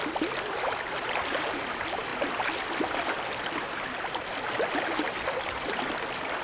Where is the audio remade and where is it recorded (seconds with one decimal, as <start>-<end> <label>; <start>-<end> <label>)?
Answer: 0.0-6.4 recorded